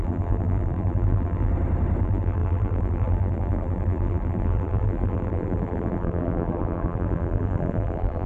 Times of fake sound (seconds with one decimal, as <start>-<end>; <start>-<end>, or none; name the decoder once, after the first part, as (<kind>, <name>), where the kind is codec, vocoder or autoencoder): 0.0-1.5 (vocoder, BigVGAN v2); 2.0-8.3